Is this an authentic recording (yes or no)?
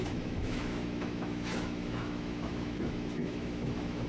no